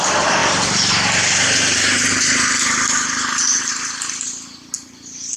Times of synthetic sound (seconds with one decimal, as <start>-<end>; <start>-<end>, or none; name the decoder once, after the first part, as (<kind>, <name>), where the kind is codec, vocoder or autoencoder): 0.4-3.6 (vocoder, BigVGAN v2)